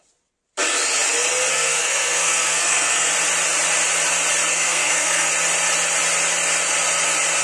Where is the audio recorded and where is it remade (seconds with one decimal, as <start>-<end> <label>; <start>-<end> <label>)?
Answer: 0.0-1.5 recorded; 1.5-3.1 remade; 3.1-4.5 recorded; 4.5-5.3 remade; 5.3-7.4 recorded